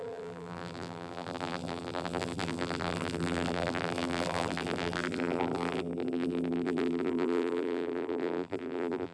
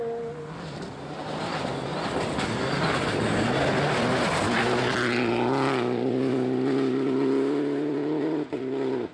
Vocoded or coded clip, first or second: first